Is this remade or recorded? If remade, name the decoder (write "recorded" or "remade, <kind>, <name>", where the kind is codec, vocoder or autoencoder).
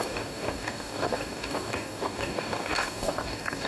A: remade, codec, DAC